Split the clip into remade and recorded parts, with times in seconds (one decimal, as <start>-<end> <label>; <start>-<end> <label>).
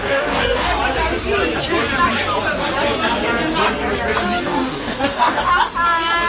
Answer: 0.0-0.7 remade; 0.7-4.4 recorded; 4.4-5.5 remade; 5.5-6.3 recorded